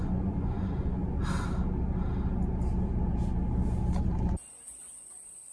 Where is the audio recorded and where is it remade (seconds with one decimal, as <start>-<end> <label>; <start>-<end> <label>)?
0.0-1.2 remade; 1.2-4.5 recorded; 4.5-5.5 remade